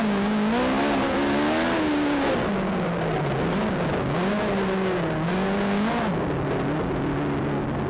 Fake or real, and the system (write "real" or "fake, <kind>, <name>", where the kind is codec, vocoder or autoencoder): real